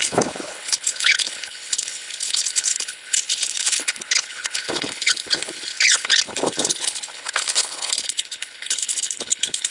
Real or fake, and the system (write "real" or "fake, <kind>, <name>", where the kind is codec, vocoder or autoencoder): fake, codec, HILCodec